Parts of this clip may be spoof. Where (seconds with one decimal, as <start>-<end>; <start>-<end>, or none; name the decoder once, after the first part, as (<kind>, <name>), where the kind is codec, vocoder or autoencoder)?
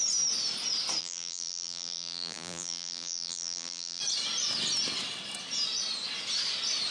1.0-4.0 (vocoder, BigVGAN v2)